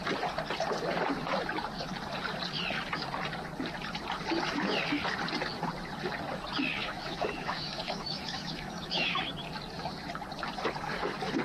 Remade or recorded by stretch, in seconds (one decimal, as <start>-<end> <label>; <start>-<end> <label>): 0.0-6.8 recorded; 6.8-9.2 remade; 9.2-11.4 recorded